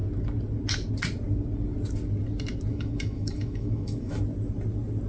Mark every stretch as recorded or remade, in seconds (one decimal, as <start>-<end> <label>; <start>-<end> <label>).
0.0-2.7 recorded; 2.7-4.2 remade; 4.2-5.1 recorded